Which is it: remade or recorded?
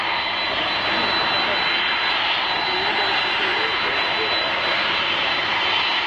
recorded